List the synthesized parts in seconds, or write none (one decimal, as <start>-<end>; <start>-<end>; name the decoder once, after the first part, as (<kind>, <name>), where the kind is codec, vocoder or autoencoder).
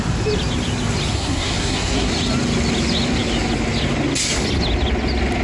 1.1-2.1 (codec, SNAC)